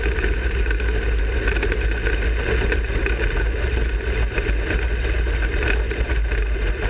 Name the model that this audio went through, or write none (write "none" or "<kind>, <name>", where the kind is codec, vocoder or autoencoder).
none